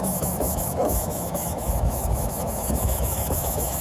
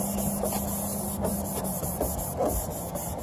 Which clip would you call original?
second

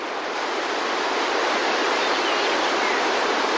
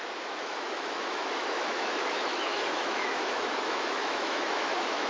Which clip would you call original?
first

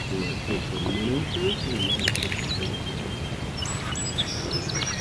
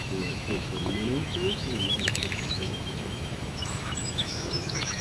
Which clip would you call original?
first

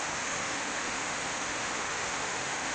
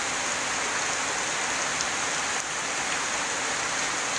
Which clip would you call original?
second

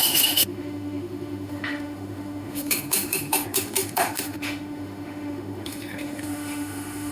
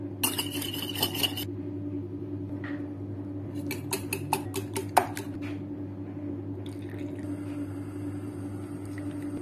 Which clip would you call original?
second